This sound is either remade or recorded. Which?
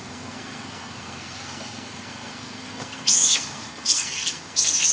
remade